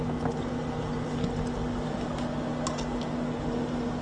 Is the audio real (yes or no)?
yes